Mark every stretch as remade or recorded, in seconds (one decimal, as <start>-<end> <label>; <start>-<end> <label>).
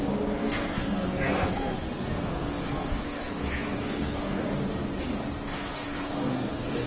0.0-0.4 recorded; 0.4-4.5 remade; 4.5-5.5 recorded; 5.5-6.9 remade